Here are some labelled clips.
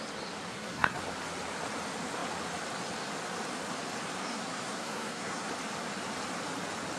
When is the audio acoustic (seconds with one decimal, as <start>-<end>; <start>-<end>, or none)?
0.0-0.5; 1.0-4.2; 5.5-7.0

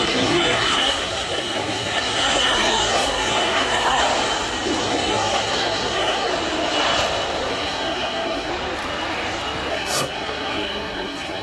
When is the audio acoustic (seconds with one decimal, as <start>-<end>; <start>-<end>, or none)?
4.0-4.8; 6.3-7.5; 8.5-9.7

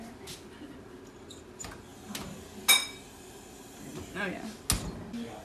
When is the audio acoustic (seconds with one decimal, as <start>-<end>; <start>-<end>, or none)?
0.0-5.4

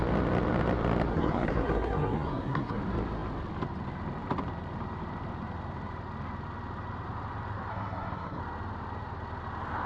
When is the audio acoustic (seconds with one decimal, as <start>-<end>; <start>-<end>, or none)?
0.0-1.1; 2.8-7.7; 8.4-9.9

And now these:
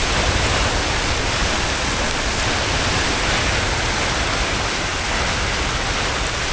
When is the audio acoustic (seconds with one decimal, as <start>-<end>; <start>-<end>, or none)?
0.0-6.5

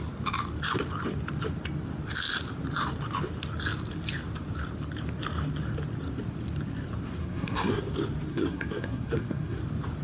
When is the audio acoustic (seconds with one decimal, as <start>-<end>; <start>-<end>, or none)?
0.0-7.2; 7.8-8.3; 9.6-10.0

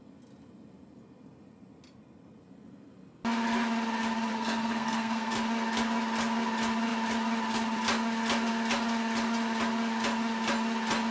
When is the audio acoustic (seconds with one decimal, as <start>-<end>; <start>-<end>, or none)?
0.0-4.3; 5.3-11.1